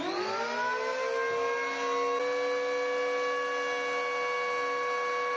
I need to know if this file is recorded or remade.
recorded